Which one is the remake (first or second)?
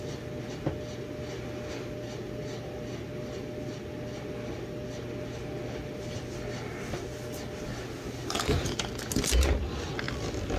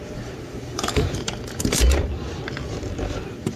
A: second